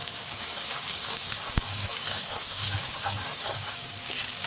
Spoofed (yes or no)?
yes